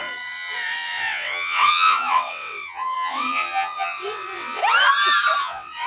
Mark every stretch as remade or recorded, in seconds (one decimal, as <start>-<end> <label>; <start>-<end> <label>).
0.0-4.6 remade; 4.6-5.4 recorded; 5.4-5.9 remade